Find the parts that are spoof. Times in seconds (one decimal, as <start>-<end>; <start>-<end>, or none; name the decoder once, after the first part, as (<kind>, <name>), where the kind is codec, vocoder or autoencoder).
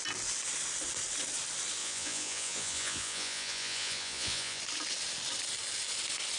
1.8-4.6 (vocoder, Vocos)